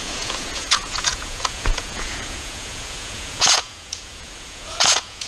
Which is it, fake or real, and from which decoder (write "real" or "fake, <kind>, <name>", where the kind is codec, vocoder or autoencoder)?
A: fake, vocoder, Vocos